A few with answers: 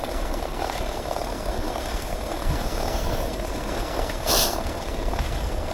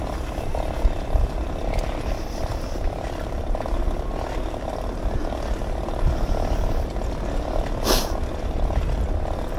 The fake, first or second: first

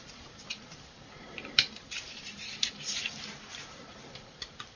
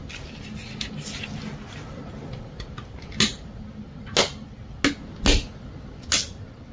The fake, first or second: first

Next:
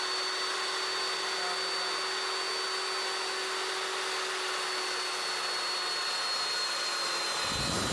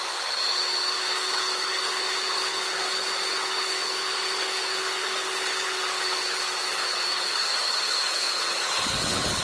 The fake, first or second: second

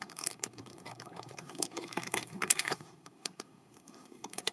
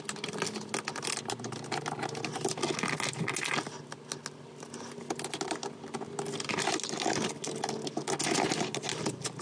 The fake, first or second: first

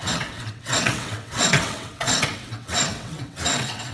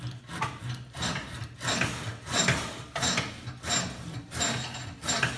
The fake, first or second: first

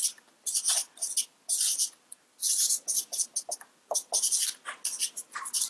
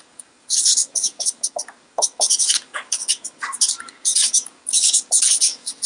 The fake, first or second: second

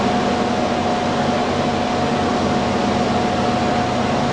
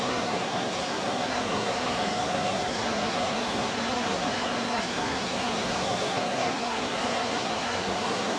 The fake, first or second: second